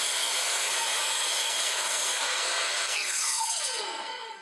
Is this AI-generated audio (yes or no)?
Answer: yes